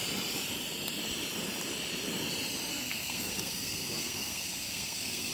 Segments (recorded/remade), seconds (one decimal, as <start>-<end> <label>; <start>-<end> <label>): 0.0-2.7 recorded; 2.7-5.3 remade